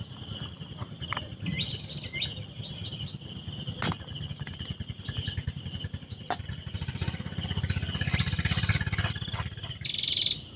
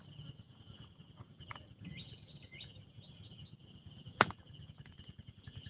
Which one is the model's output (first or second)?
second